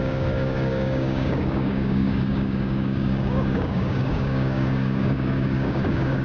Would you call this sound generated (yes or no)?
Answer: yes